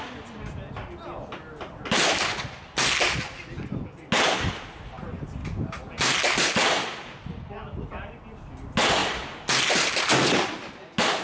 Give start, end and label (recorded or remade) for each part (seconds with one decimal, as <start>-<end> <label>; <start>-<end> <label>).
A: 0.0-11.2 recorded